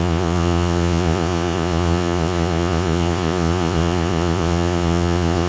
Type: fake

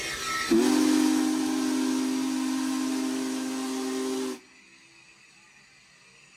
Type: real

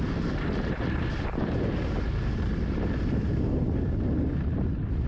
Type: real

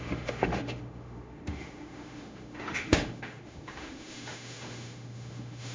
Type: fake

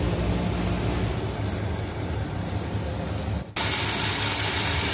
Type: real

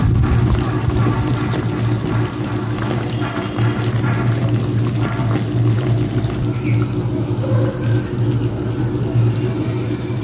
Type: real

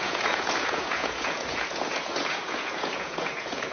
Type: fake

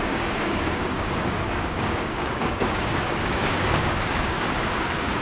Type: fake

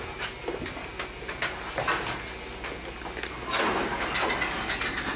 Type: real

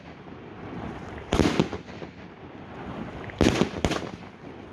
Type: real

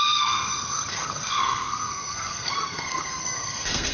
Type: fake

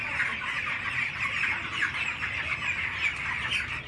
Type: real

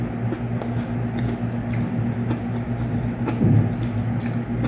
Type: real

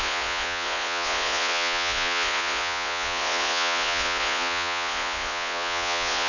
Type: fake